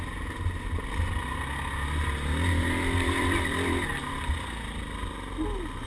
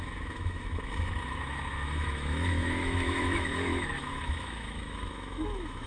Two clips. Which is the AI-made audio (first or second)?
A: second